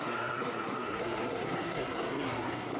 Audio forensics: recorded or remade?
remade